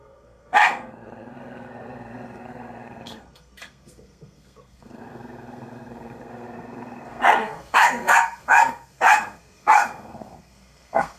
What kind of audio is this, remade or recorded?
remade